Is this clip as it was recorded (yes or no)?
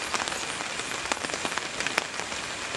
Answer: yes